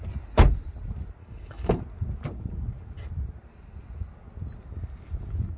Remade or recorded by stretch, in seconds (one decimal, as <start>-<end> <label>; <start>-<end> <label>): 0.0-1.2 recorded; 1.2-1.8 remade; 1.8-5.6 recorded